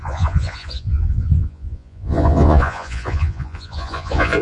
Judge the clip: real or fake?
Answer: fake